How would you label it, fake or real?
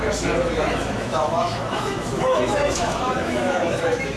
fake